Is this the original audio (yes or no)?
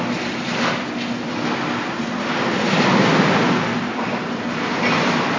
yes